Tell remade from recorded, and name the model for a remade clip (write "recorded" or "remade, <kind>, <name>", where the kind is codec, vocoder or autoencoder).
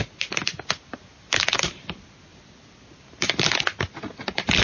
recorded